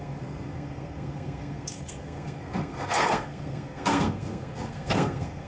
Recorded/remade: remade